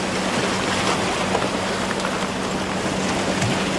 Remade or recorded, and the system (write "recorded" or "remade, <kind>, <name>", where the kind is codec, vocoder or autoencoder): recorded